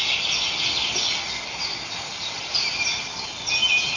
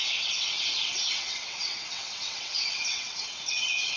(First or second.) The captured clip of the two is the first